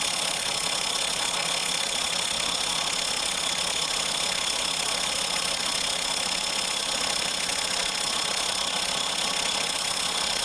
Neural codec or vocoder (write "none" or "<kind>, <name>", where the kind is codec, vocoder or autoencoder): vocoder, Vocos